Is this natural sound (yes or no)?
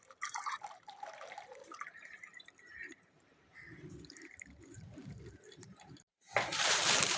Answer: no